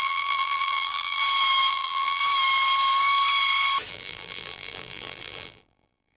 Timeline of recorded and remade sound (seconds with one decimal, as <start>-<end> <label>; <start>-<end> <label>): 0.0-1.2 remade; 1.2-1.7 recorded; 1.7-2.2 remade; 2.2-3.9 recorded; 3.9-6.2 remade